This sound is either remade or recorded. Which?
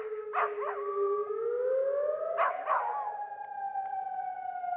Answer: recorded